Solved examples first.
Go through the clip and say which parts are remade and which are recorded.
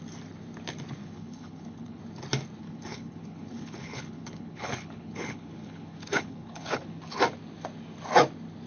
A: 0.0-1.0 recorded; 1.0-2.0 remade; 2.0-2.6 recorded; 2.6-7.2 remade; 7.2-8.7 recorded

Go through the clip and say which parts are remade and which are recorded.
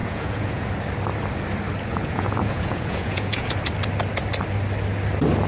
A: 0.0-0.7 remade; 0.7-1.9 recorded; 1.9-3.5 remade; 3.5-5.5 recorded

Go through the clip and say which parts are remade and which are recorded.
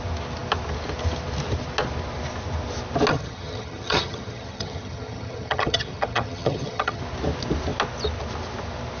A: 0.0-3.1 recorded; 3.1-7.0 remade; 7.0-9.0 recorded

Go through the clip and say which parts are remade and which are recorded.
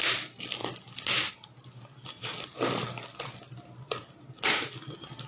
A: 0.0-5.3 recorded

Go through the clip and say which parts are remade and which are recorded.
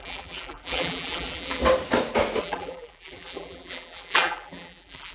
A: 0.0-1.6 remade; 1.6-2.4 recorded; 2.4-5.1 remade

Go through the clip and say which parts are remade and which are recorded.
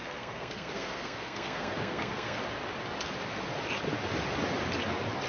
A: 0.0-2.4 remade; 2.4-5.3 recorded